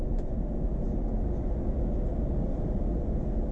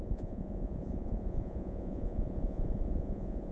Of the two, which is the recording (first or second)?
first